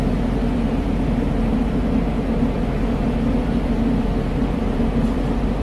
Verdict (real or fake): fake